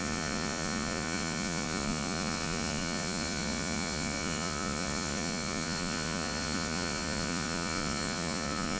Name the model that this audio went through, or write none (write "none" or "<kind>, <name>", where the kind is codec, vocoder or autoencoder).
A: vocoder, Vocos